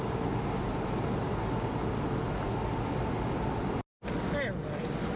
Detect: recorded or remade recorded